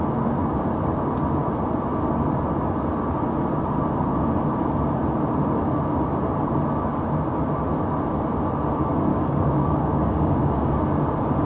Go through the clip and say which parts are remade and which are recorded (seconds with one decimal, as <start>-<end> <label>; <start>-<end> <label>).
0.0-9.1 recorded; 9.1-10.8 remade; 10.8-11.4 recorded